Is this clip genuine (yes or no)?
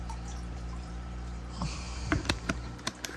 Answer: no